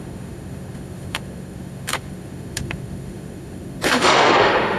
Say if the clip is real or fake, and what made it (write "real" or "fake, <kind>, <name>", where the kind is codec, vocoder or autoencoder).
fake, autoencoder, DAC-VAE